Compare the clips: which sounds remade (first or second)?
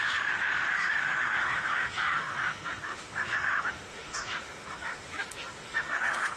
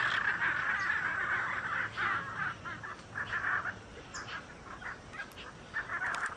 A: first